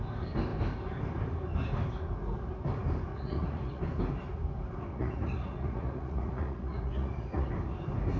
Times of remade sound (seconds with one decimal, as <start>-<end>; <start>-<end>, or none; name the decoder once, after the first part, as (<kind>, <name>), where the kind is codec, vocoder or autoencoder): 3.1-3.8 (vocoder, Vocos); 4.9-7.5